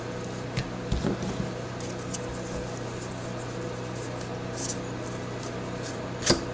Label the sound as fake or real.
real